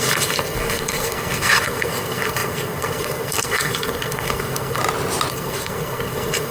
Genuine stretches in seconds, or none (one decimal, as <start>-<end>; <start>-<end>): 4.8-5.3